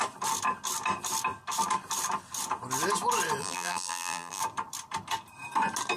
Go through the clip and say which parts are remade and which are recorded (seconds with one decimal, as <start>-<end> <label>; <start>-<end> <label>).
0.0-3.4 recorded; 3.4-4.4 remade; 4.4-6.0 recorded